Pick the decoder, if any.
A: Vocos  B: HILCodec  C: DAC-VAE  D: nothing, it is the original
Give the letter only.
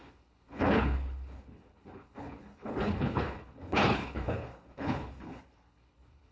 B